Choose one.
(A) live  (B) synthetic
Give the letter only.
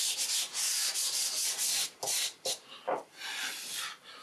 A